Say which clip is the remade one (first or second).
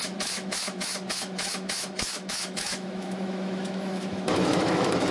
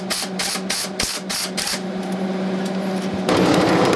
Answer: first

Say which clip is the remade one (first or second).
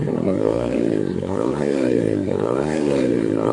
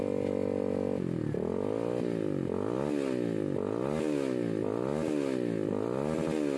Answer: first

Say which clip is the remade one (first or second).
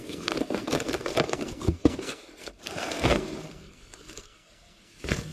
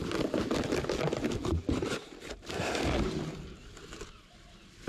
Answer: first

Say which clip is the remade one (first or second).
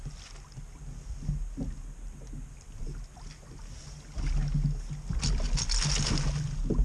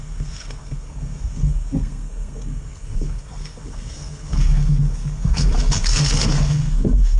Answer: second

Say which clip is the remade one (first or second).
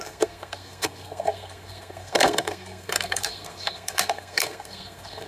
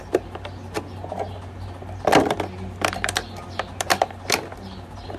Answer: first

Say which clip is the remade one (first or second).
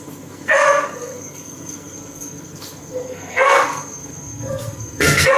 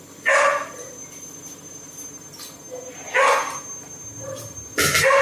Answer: first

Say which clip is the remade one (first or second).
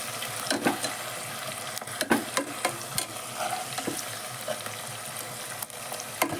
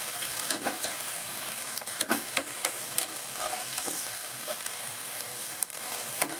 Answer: second